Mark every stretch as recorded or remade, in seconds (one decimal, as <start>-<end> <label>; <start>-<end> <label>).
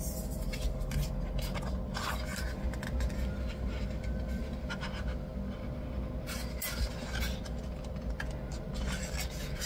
0.0-9.7 recorded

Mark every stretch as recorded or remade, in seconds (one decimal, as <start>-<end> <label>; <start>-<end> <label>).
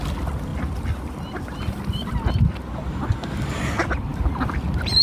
0.0-5.0 recorded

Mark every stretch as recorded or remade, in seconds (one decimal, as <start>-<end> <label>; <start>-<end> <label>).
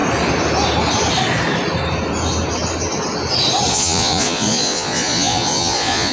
0.0-3.7 recorded; 3.7-6.1 remade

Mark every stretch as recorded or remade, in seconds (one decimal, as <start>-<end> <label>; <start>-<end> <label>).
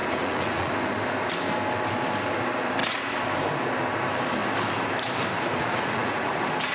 0.0-0.7 remade; 0.7-5.6 recorded; 5.6-6.3 remade; 6.3-6.7 recorded